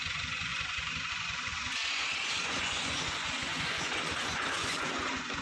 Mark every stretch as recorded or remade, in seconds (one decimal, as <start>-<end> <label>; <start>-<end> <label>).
0.0-5.4 remade